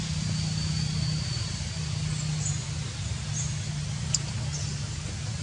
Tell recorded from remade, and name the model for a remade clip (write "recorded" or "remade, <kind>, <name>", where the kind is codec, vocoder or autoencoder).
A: remade, vocoder, BigVGAN v2